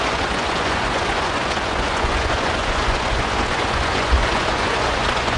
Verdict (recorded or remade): remade